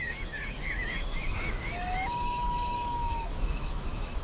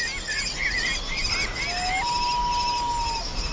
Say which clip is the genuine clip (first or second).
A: second